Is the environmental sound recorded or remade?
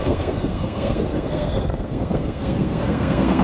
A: remade